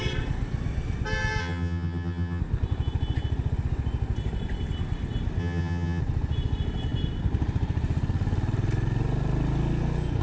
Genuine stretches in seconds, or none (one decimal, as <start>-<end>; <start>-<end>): 0.0-1.4; 2.4-5.4; 6.0-10.2